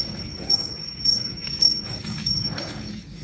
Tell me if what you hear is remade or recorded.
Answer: remade